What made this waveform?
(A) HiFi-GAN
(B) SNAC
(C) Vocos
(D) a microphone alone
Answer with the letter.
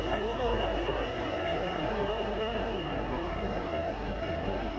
B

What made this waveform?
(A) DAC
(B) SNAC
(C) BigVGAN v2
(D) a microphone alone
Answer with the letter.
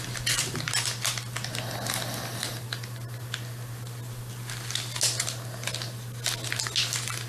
D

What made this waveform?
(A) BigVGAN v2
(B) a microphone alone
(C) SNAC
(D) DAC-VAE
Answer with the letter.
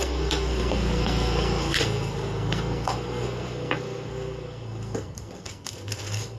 C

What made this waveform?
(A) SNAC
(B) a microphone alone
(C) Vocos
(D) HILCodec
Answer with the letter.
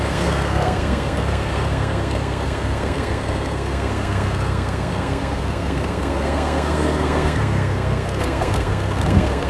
A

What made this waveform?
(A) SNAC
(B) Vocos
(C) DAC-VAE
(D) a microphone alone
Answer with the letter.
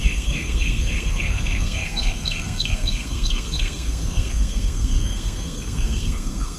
A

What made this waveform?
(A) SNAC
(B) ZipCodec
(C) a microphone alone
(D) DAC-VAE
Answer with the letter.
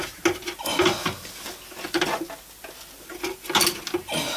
C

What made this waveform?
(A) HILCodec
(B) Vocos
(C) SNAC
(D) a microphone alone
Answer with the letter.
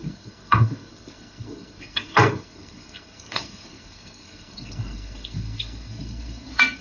C